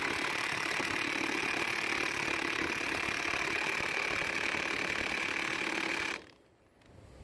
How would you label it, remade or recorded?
recorded